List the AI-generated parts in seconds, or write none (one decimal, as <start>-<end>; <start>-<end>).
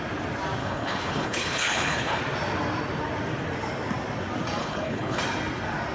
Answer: 0.6-2.2; 4.6-5.2